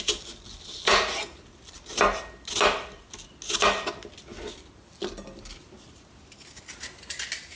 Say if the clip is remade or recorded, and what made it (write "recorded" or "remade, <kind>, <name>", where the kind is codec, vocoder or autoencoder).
recorded